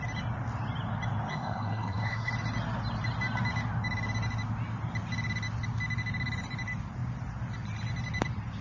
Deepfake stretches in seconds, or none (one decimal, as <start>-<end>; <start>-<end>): 1.3-2.3